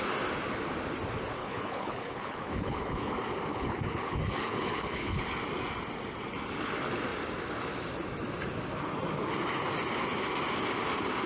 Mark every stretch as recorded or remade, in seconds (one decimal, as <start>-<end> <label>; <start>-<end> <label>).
0.0-1.4 recorded; 1.4-3.1 remade; 3.1-3.5 recorded; 3.5-5.2 remade; 5.2-11.3 recorded